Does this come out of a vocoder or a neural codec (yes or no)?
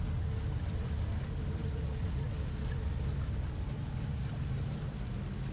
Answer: no